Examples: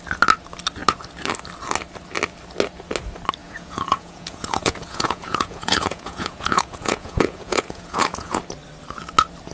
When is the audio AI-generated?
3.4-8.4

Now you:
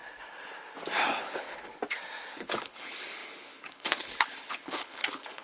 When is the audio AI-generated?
1.1-1.7; 2.3-5.4

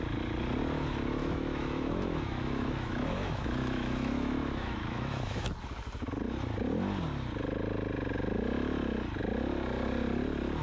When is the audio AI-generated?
1.2-5.5

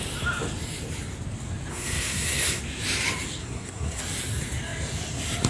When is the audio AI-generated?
1.7-2.6; 3.4-4.0